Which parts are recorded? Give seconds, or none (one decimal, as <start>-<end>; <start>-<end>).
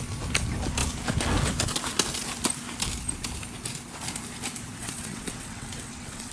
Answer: 0.0-4.8